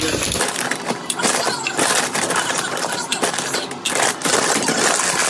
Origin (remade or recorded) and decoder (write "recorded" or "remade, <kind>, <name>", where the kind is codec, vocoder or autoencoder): recorded